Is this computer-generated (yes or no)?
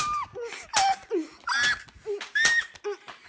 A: no